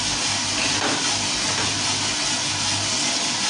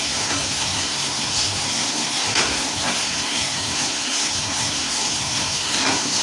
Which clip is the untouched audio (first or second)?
first